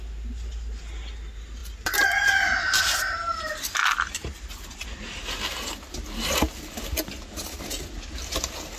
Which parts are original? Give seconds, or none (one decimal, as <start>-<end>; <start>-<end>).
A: 0.0-8.8